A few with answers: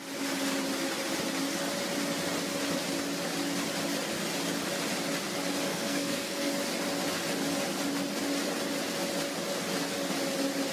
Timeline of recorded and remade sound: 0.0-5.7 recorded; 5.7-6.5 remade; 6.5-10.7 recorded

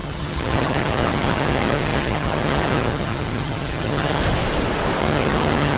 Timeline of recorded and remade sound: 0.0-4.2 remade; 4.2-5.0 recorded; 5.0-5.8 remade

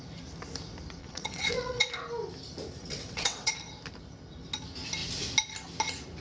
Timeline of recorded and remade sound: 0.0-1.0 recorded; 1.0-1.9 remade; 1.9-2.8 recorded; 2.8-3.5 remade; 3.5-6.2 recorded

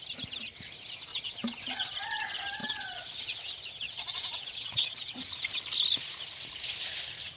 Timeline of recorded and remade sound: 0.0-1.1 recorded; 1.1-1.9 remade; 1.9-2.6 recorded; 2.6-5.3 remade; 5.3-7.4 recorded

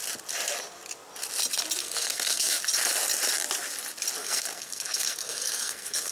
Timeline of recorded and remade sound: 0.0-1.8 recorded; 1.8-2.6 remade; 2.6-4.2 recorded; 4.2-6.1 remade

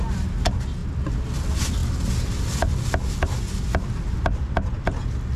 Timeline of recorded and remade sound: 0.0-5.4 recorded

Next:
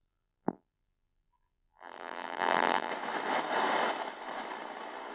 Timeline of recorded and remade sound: 0.0-2.9 remade; 2.9-5.1 recorded

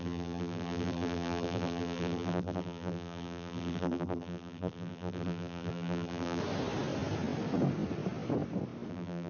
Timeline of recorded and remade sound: 0.0-6.4 remade; 6.4-8.9 recorded; 8.9-9.3 remade